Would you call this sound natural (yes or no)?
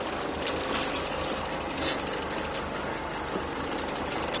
yes